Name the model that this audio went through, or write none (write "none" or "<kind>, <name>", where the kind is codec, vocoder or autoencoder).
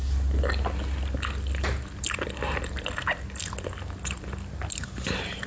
none